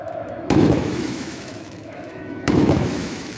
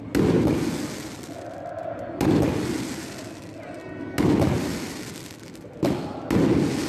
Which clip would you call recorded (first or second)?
second